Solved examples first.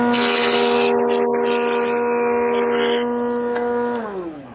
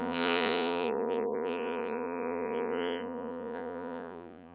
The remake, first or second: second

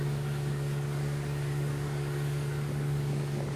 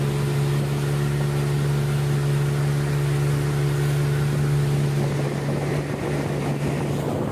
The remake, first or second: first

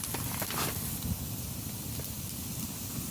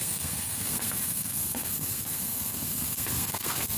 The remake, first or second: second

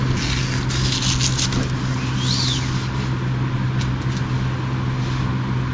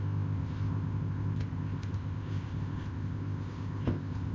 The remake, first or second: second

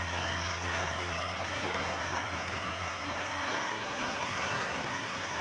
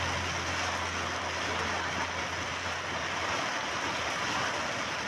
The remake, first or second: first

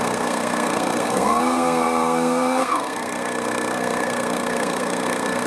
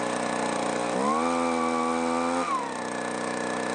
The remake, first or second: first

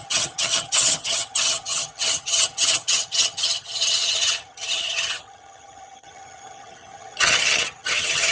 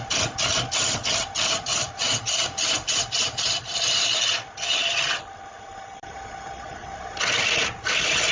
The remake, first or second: first